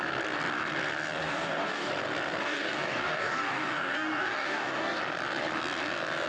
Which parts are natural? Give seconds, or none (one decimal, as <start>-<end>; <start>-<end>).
0.0-1.2; 1.9-2.4; 5.0-6.3